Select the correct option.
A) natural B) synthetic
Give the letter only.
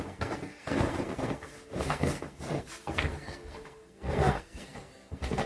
B